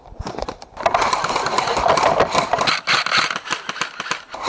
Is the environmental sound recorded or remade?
recorded